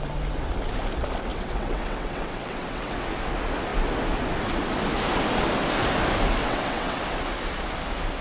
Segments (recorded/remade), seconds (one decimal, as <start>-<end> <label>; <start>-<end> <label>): 0.0-1.3 recorded; 1.3-3.0 remade; 3.0-6.4 recorded; 6.4-7.0 remade; 7.0-8.2 recorded